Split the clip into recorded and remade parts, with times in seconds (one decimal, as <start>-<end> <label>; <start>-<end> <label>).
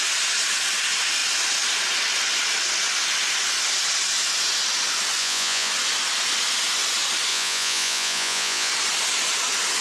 0.0-5.2 recorded; 5.2-5.7 remade; 5.7-7.3 recorded; 7.3-8.7 remade; 8.7-9.8 recorded